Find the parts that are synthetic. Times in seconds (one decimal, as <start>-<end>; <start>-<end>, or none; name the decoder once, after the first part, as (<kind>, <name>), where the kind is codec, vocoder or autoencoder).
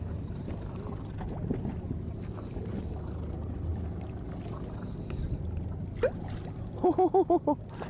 none